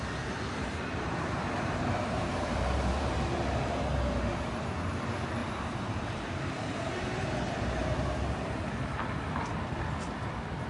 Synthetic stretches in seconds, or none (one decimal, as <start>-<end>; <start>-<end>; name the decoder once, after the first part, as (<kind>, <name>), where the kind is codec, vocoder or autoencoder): 0.6-3.9 (vocoder, BigVGAN v2); 5.4-7.1; 7.8-9.8

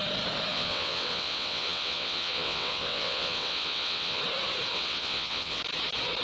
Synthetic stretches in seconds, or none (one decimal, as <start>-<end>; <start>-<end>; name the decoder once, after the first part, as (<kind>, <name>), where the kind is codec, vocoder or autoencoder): 0.5-4.2 (vocoder, WaveNeXt); 4.7-5.6

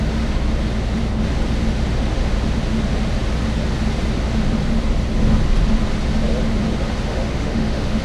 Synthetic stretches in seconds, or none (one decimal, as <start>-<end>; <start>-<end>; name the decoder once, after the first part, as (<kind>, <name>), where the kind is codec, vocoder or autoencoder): 7.1-8.0 (autoencoder, DAC-VAE)

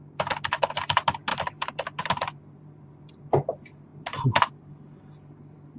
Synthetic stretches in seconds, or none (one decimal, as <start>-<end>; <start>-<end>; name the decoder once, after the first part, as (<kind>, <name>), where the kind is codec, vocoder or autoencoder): 1.3-3.2 (vocoder, BigVGAN v2); 3.9-4.5

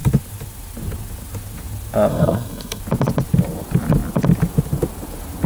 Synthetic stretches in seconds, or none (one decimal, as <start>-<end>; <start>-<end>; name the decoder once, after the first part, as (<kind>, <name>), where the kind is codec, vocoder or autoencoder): 2.1-2.8 (codec, SNAC)

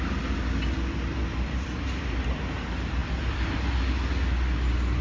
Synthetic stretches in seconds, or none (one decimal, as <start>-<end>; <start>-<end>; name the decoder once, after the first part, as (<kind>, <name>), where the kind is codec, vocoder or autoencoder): none